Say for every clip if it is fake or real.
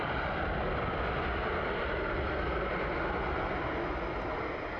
real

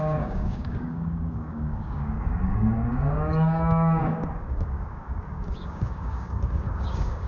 fake